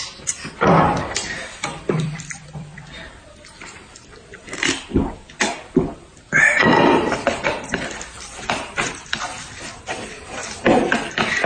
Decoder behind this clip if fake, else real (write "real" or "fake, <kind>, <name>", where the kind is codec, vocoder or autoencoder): fake, vocoder, BigVGAN v2